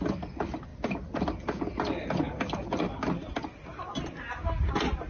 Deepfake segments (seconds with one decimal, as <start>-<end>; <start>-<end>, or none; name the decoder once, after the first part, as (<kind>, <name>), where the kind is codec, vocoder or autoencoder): none